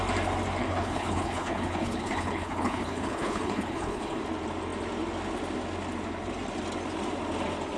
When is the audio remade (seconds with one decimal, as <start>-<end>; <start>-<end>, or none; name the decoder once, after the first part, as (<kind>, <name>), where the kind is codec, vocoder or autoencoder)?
0.6-4.2 (codec, HILCodec)

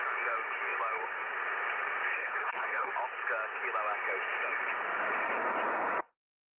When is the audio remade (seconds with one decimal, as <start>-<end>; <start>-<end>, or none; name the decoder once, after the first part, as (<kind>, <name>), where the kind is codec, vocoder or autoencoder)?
2.2-2.9 (codec, HILCodec)

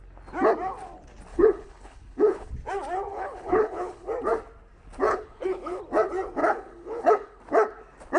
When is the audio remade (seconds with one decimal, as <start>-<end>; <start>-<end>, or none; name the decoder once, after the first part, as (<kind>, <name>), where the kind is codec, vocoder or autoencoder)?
1.3-2.5 (codec, HILCodec); 3.1-4.1; 5.1-5.8; 6.4-7.4

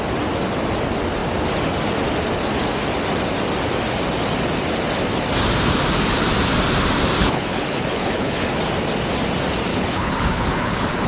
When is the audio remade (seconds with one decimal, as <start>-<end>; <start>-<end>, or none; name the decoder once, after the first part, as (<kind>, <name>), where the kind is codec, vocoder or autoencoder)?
7.2-8.6 (codec, HILCodec); 9.7-11.1

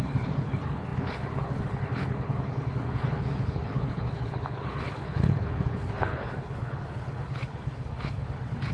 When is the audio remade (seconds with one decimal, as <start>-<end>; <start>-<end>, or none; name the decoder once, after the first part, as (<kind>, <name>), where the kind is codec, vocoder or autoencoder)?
0.0-8.7 (codec, HILCodec)

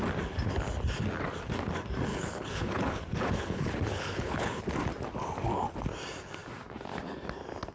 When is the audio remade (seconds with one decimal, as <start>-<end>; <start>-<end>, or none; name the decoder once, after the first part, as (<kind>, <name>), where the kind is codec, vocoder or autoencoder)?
2.1-4.6 (codec, HILCodec)